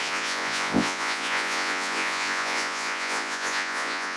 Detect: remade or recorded remade